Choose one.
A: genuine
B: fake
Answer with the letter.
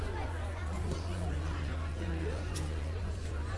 B